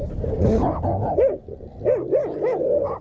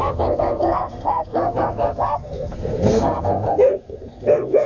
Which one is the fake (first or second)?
second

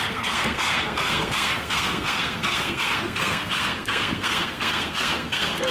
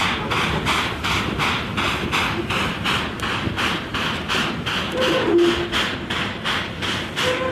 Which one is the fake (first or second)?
first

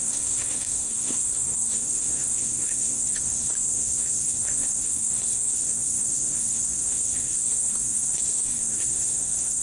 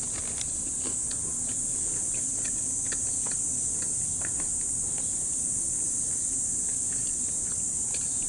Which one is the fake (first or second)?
first